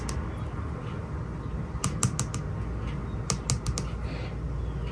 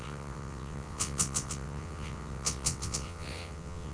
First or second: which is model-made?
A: second